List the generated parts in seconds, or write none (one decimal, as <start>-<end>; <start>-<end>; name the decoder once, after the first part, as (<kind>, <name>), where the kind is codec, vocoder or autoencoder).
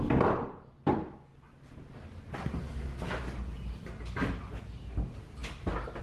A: none